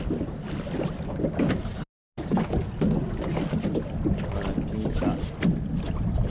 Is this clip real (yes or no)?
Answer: yes